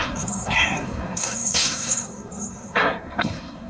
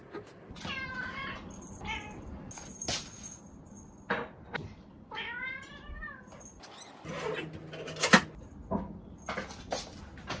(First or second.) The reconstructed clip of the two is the first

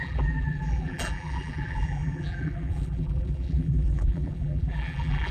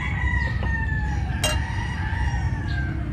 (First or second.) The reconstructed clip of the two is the first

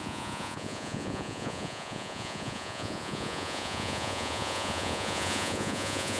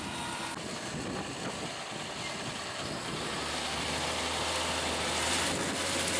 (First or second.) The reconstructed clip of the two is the first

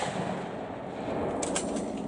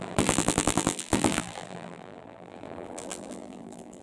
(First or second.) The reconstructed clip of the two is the second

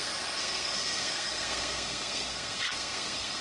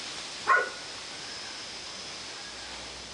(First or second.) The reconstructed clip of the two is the first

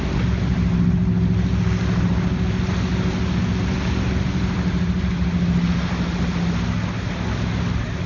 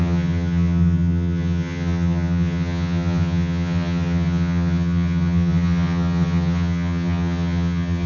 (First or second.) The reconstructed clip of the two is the second